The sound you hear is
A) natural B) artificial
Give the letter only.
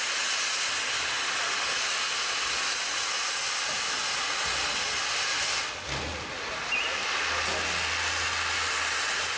A